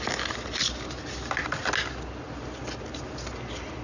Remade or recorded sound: recorded